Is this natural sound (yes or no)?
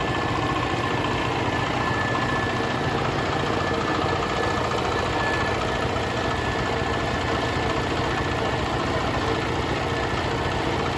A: yes